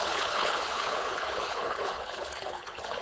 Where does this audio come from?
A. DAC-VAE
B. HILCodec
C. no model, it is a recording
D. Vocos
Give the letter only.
B